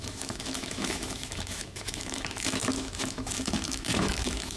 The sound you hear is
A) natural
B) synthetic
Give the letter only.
B